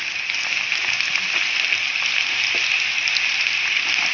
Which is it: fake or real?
real